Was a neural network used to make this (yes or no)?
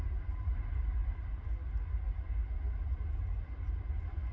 no